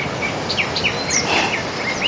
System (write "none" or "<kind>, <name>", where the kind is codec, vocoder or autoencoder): none